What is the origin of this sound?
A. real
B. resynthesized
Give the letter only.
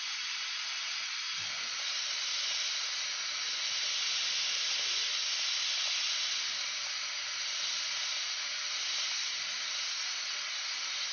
A